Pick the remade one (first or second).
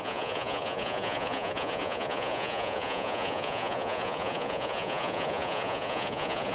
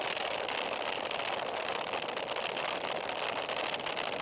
first